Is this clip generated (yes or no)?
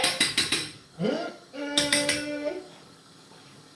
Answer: yes